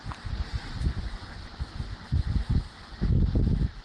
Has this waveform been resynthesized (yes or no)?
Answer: no